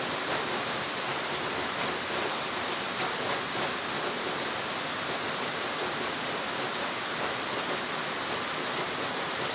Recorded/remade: recorded